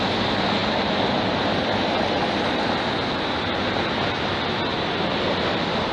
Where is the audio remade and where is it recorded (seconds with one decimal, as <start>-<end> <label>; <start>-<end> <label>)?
0.0-5.9 recorded